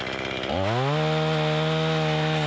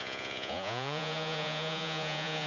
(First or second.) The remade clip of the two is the second